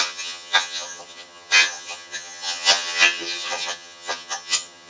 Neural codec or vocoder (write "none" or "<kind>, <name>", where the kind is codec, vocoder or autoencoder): vocoder, HiFi-GAN